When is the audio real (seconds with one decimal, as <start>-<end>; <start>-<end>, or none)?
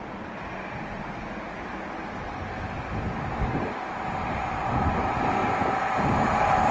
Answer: 0.0-6.7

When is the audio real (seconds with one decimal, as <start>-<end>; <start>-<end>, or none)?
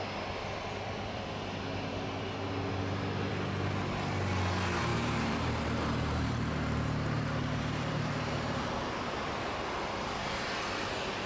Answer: 0.0-4.9; 8.7-11.3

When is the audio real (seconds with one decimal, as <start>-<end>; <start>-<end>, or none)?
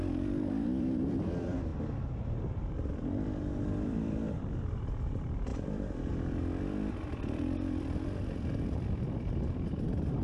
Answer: 1.7-2.2; 5.5-6.1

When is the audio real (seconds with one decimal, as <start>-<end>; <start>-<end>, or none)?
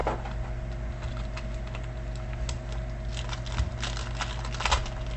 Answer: 0.0-5.2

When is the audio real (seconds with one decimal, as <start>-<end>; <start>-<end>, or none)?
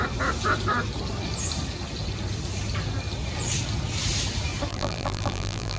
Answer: 0.0-4.7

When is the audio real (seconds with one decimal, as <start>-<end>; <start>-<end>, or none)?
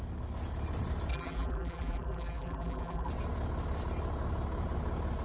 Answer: 0.0-1.1; 3.1-5.2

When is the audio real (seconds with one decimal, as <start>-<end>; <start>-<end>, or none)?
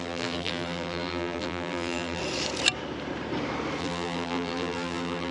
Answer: 2.2-3.8